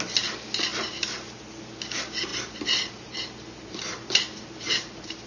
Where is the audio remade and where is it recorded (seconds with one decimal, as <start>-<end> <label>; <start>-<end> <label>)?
0.0-0.7 recorded; 0.7-1.3 remade; 1.3-2.3 recorded; 2.3-5.3 remade